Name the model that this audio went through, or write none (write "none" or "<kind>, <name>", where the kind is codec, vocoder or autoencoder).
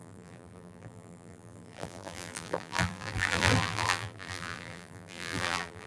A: vocoder, BigVGAN v2